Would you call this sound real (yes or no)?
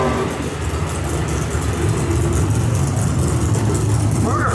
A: yes